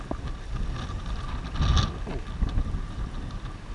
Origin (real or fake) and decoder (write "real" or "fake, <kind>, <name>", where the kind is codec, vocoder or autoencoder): real